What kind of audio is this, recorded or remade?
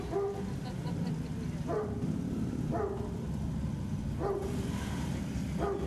recorded